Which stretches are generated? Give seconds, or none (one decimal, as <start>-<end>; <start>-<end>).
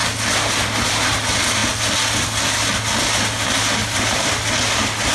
3.8-4.3